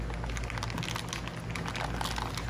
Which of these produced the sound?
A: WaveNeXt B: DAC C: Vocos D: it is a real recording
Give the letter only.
D